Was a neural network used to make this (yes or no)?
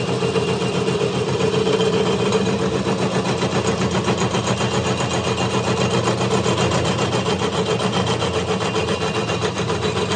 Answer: no